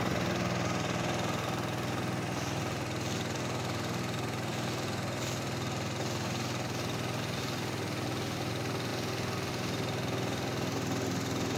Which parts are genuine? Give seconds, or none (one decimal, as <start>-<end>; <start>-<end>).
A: 0.0-11.6